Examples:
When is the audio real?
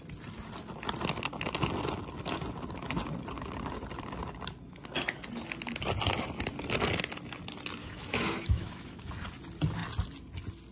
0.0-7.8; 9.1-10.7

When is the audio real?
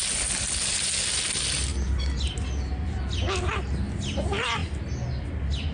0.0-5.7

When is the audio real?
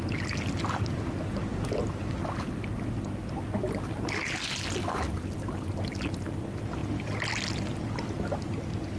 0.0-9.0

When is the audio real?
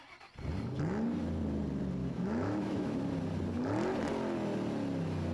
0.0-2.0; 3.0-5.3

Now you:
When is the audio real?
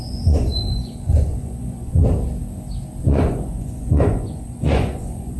2.0-3.0